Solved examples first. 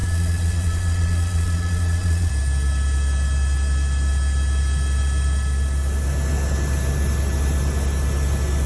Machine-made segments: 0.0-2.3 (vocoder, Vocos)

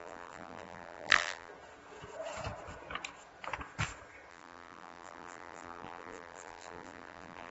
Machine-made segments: 0.0-1.5 (vocoder, BigVGAN v2); 4.3-7.5

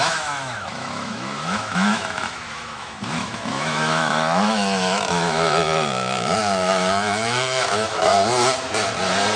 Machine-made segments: 0.0-8.1 (autoencoder, DAC-VAE)

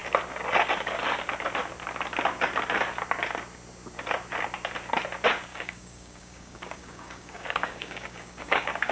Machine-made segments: 5.5-8.9 (codec, DAC)

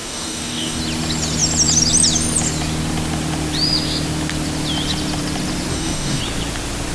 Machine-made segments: 0.0-0.8 (codec, DAC); 5.7-6.2

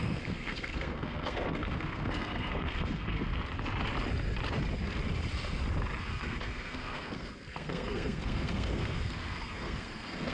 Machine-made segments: 0.0-3.3 (codec, SNAC); 6.0-10.3

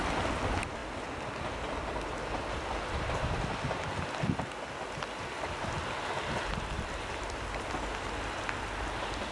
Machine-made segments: none

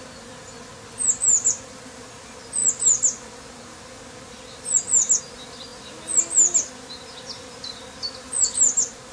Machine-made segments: none